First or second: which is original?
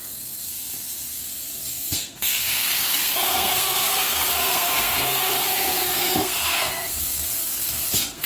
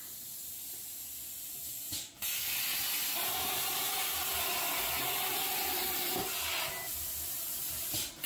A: second